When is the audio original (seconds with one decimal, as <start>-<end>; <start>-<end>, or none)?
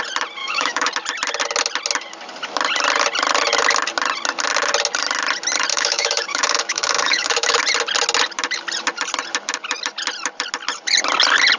0.0-0.4; 0.9-5.7; 7.6-11.6